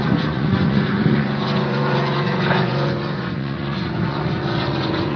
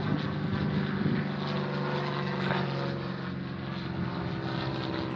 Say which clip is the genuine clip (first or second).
second